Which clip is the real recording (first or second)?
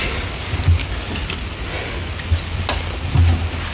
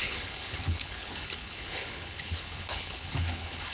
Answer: first